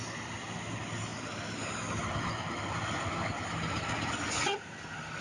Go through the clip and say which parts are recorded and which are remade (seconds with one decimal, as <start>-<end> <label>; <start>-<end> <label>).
0.0-5.2 recorded

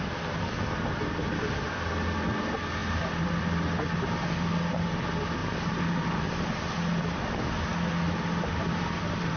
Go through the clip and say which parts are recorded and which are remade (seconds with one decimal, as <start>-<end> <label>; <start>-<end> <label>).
0.0-9.4 recorded

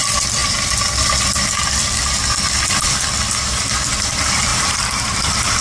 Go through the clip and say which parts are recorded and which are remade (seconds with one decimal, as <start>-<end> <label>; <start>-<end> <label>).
0.0-0.4 recorded; 0.4-1.3 remade; 1.3-4.5 recorded; 4.5-5.0 remade; 5.0-5.6 recorded

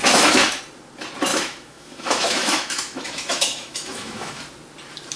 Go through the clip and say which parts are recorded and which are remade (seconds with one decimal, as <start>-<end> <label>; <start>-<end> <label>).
0.0-0.6 remade; 0.6-1.3 recorded; 1.3-4.4 remade; 4.4-5.2 recorded

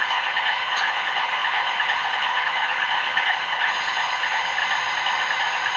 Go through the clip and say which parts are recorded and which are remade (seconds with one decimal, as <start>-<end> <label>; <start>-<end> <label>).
0.0-4.6 remade; 4.6-5.8 recorded

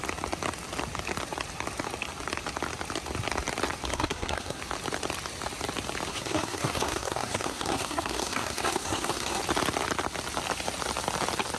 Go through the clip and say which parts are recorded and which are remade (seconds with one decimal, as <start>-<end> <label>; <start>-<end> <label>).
0.0-3.9 recorded; 3.9-4.6 remade; 4.6-6.1 recorded; 6.1-9.4 remade; 9.4-11.6 recorded

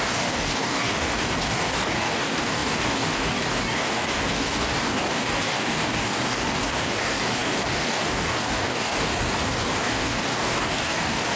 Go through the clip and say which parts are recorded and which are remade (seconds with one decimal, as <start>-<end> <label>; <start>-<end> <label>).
0.0-11.4 remade

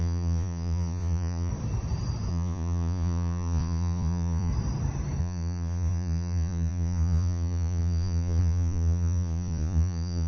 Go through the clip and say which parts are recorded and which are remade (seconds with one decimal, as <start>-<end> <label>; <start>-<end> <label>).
0.0-1.5 remade; 1.5-2.3 recorded; 2.3-4.5 remade; 4.5-5.2 recorded; 5.2-10.3 remade